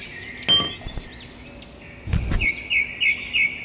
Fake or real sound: real